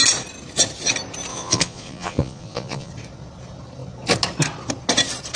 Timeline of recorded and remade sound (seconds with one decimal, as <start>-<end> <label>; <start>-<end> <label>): 0.0-1.3 recorded; 1.3-2.9 remade; 2.9-5.4 recorded